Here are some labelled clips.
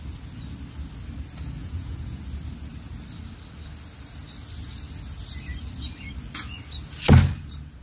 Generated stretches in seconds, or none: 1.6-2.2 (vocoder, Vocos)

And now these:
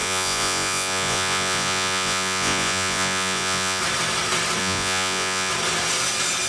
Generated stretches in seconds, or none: 0.0-3.8 (vocoder, Vocos); 4.6-5.5

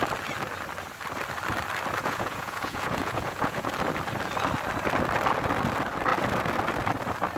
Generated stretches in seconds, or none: 2.0-3.7 (vocoder, Vocos)

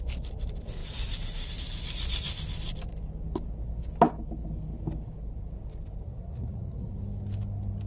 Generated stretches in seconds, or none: 6.1-6.9 (vocoder, Vocos)